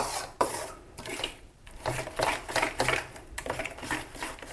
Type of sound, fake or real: fake